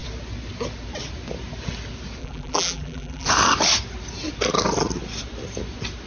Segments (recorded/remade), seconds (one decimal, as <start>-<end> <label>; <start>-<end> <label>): 0.0-2.2 recorded; 2.2-3.3 remade; 3.3-6.1 recorded